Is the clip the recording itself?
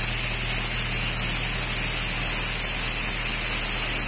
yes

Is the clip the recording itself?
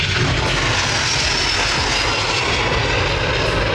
yes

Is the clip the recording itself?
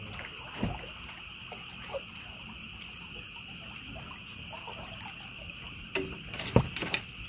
yes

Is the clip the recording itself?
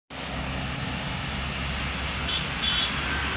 yes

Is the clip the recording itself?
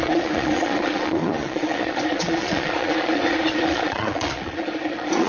no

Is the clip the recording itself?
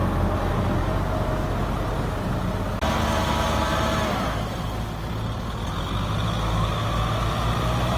yes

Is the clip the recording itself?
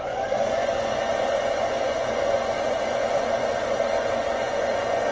no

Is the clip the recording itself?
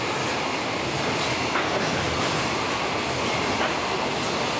yes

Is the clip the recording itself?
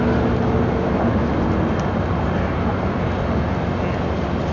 yes